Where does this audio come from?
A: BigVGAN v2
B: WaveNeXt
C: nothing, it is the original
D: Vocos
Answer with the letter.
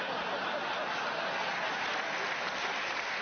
C